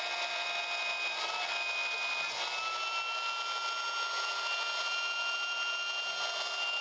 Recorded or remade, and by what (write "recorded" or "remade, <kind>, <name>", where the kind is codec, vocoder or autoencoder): recorded